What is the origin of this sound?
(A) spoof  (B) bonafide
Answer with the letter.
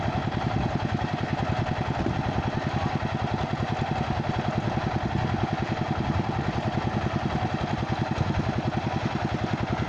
B